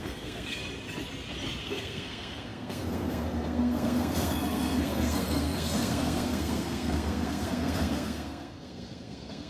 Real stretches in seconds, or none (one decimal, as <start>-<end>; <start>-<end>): 0.6-1.6